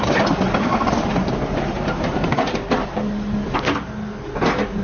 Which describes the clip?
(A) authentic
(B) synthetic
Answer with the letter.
A